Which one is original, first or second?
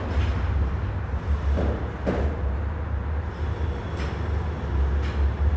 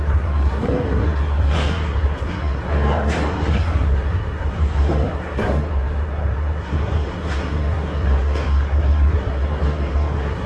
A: first